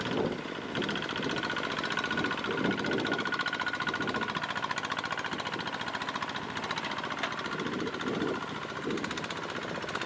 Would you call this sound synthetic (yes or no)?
no